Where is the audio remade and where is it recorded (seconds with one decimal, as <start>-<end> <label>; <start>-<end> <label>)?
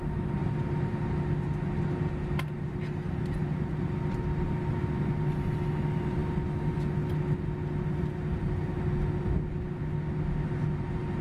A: 0.0-11.2 recorded